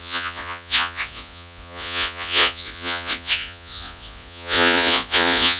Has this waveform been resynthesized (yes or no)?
yes